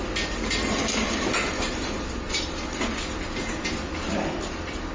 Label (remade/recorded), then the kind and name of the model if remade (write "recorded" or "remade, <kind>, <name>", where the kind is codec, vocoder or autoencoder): recorded